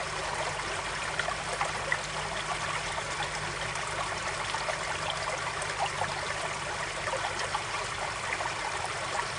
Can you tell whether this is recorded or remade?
recorded